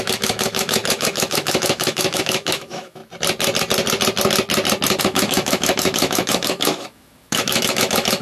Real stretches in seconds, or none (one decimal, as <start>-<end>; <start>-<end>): 3.0-5.0